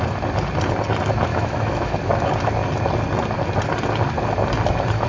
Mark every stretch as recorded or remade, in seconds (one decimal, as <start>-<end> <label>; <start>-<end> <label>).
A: 0.0-1.3 recorded; 1.3-2.0 remade; 2.0-5.1 recorded